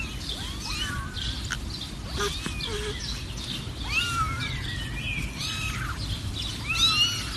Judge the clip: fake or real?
real